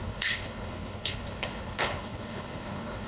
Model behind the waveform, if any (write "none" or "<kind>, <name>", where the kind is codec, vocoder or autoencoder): codec, HILCodec